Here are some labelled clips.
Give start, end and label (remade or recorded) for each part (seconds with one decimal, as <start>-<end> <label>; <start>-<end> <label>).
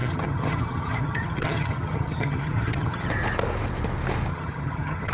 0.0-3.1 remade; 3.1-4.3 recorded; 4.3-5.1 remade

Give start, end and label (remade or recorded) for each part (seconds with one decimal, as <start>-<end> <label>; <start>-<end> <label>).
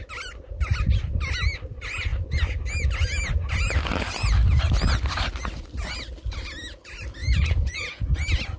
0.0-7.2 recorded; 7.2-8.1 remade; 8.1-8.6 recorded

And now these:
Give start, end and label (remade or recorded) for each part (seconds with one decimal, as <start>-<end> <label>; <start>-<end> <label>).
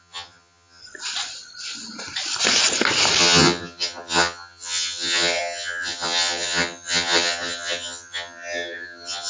0.0-0.8 remade; 0.8-3.2 recorded; 3.2-9.3 remade